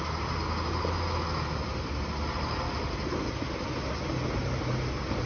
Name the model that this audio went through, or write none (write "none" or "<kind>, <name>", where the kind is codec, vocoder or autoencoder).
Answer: none